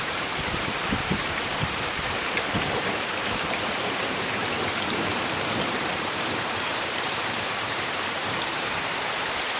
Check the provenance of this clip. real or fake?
fake